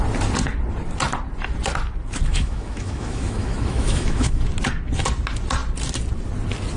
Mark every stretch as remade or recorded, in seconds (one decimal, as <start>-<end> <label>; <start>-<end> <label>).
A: 0.0-2.3 recorded; 2.3-4.4 remade; 4.4-6.8 recorded